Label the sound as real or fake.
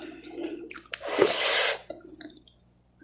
real